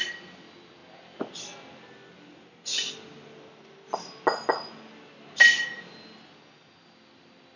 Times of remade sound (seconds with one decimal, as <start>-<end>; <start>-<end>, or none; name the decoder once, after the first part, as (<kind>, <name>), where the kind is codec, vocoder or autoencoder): none